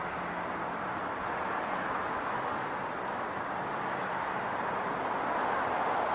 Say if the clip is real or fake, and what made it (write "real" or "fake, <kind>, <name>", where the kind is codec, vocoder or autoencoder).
real